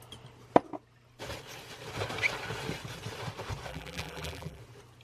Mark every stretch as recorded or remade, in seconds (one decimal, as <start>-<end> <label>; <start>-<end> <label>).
0.0-3.7 recorded; 3.7-4.6 remade; 4.6-5.0 recorded